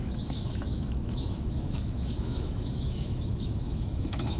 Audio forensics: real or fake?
fake